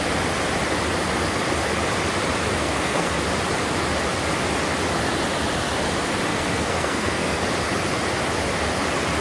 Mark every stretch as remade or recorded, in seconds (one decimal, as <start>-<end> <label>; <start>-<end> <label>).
0.0-2.6 recorded; 2.6-3.1 remade; 3.1-6.3 recorded; 6.3-7.4 remade; 7.4-9.2 recorded